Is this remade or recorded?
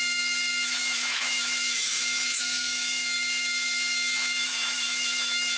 remade